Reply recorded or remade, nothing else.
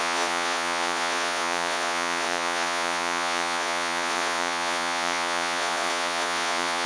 remade